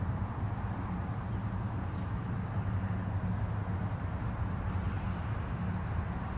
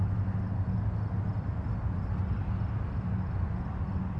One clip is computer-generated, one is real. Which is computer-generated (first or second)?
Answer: first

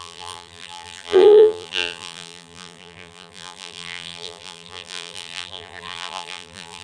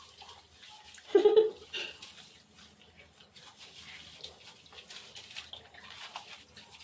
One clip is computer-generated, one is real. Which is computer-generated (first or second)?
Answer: first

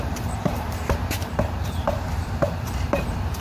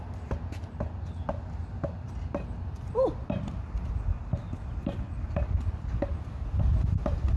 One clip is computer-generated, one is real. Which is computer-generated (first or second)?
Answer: first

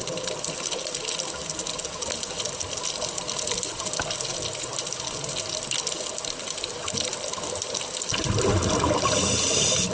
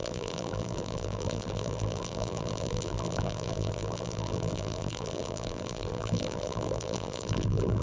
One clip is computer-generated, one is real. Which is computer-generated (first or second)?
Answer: second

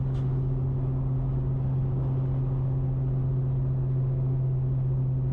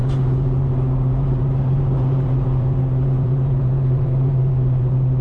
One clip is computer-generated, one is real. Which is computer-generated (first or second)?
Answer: second